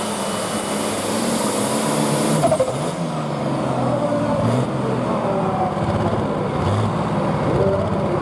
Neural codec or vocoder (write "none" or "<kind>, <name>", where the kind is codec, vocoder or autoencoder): none